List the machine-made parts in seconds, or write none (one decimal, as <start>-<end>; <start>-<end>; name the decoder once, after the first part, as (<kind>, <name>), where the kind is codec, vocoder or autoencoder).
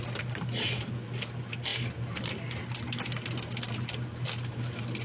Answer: none